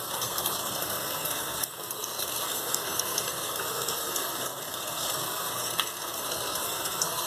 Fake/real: fake